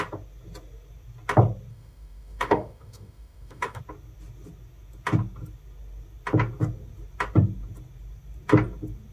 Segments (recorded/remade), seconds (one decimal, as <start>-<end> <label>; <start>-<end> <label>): 0.0-1.7 recorded; 1.7-3.8 remade; 3.8-9.1 recorded